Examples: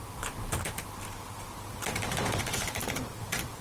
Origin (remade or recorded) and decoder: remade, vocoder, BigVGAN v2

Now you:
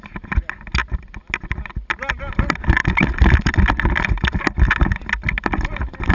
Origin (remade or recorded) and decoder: recorded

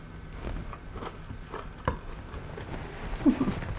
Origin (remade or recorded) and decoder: recorded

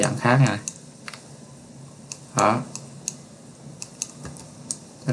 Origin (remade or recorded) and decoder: recorded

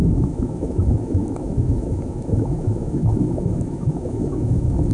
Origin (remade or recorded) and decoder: remade, autoencoder, DAC-VAE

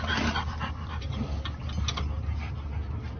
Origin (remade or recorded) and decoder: recorded